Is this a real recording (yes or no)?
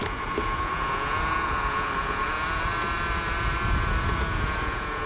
no